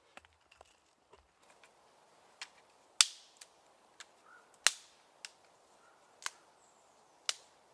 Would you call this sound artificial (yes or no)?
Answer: no